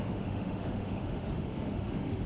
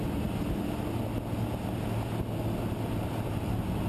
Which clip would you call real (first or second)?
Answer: second